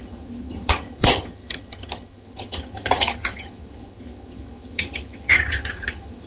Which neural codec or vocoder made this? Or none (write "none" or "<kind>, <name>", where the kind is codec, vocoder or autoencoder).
vocoder, HiFi-GAN